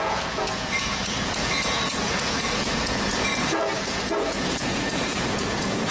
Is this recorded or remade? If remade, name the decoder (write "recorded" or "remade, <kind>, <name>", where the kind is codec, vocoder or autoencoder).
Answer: remade, vocoder, Vocos